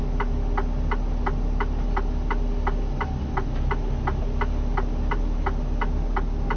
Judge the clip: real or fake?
real